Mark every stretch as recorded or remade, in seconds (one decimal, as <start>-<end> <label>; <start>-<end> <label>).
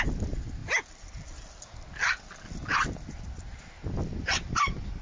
0.0-5.0 recorded